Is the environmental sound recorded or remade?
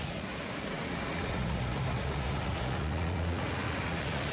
remade